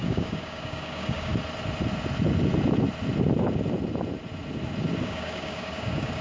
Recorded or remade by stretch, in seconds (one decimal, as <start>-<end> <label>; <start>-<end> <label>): 0.0-1.3 remade; 1.3-5.0 recorded; 5.0-6.2 remade